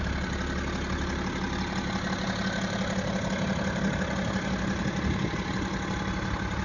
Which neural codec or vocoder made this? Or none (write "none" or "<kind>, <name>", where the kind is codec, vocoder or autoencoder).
none